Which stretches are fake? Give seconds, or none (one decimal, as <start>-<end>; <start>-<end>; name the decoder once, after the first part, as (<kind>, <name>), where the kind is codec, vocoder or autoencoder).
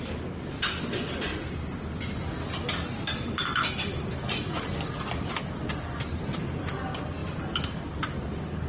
7.2-8.7 (vocoder, BigVGAN v2)